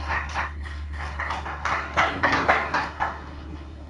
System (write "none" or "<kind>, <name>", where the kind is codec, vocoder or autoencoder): codec, SNAC